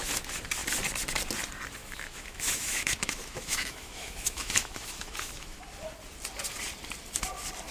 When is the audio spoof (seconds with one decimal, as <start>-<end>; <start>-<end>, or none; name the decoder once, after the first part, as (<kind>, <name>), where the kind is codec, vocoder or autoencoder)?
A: 1.8-5.6 (autoencoder, DAC-VAE)